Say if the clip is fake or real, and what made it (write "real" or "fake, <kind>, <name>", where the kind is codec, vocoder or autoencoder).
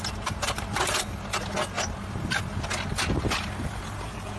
real